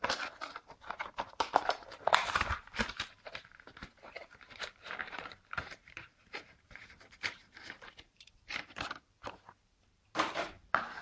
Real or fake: fake